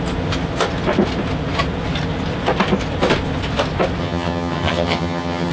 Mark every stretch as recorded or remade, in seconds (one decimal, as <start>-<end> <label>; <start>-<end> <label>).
0.0-4.0 recorded; 4.0-5.5 remade